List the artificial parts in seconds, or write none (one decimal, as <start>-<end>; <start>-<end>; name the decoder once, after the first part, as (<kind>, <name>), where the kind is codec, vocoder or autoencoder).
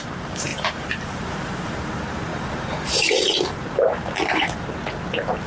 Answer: 0.0-4.8 (vocoder, BigVGAN v2)